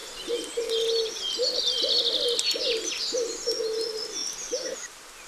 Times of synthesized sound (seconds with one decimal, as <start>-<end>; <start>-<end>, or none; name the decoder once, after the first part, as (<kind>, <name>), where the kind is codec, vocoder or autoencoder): 4.2-5.3 (vocoder, BigVGAN v2)